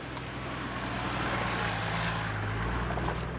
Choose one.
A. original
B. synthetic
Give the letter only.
A